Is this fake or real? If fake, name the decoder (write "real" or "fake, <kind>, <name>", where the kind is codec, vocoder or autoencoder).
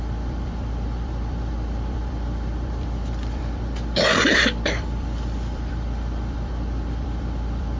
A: fake, vocoder, BigVGAN v2